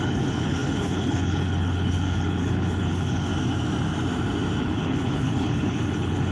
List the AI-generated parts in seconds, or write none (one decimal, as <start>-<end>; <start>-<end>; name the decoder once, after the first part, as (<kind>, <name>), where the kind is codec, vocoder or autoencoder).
0.0-3.3 (codec, HILCodec); 4.6-6.3